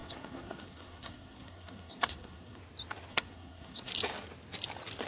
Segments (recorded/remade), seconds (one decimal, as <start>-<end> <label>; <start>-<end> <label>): 0.0-2.6 remade; 2.6-3.1 recorded; 3.1-3.9 remade; 3.9-5.1 recorded